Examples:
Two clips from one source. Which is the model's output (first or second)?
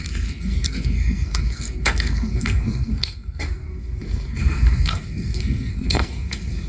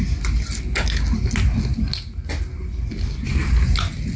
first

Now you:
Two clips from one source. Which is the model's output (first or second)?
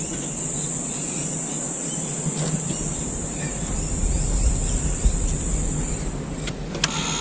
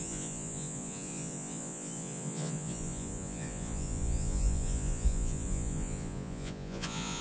second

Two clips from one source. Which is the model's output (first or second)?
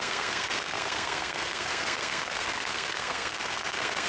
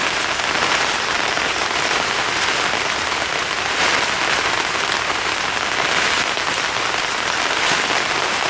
first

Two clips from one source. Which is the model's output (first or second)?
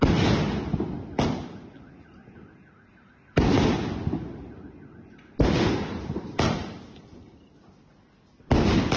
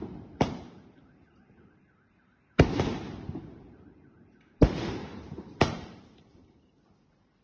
second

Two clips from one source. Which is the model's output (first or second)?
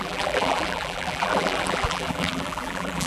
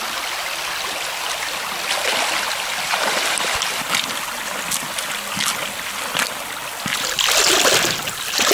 first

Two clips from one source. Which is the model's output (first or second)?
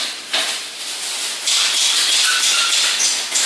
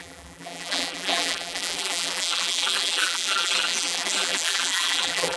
second